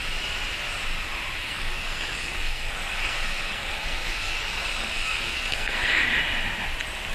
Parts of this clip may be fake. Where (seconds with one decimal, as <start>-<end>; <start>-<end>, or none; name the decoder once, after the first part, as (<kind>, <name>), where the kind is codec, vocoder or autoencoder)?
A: 1.4-6.0 (codec, SNAC)